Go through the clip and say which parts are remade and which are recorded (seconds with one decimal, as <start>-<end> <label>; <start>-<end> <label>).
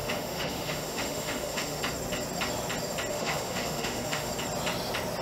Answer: 0.0-1.8 remade; 1.8-3.1 recorded; 3.1-4.3 remade; 4.3-5.2 recorded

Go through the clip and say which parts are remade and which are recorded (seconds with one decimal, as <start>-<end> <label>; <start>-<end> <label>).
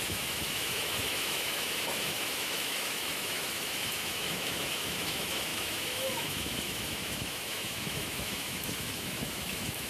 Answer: 0.0-9.9 remade